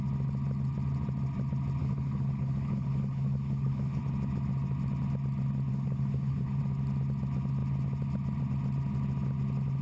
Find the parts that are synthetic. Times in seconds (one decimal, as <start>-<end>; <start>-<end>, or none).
1.8-4.0; 5.7-6.6